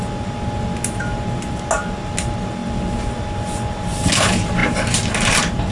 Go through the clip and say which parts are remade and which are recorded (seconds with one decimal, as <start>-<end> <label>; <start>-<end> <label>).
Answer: 0.0-5.7 recorded